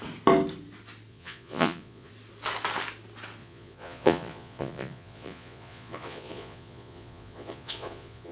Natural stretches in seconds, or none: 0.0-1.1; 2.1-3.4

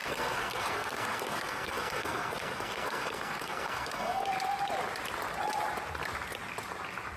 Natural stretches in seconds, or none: 4.3-7.2